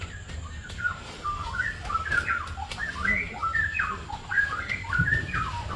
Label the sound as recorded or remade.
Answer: remade